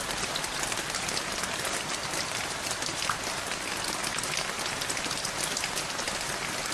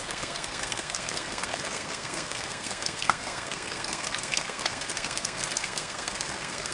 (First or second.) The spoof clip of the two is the second